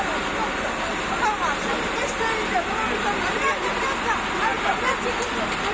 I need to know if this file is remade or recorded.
recorded